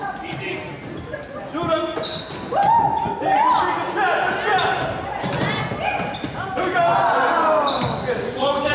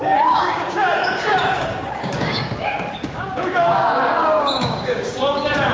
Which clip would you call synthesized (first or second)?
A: second